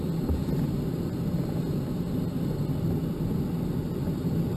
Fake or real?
real